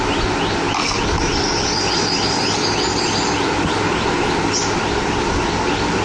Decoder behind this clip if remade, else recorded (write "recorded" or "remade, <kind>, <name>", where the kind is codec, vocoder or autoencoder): recorded